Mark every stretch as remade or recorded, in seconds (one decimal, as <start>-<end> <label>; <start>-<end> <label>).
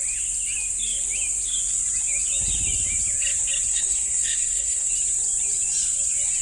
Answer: 0.0-3.7 recorded; 3.7-4.9 remade; 4.9-6.4 recorded